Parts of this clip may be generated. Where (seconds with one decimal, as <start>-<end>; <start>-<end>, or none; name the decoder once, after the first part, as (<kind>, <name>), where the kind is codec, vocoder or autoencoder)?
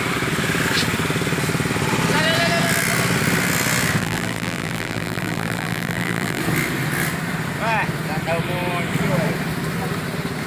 4.0-6.4 (vocoder, BigVGAN v2)